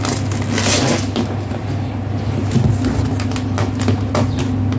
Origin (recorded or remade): recorded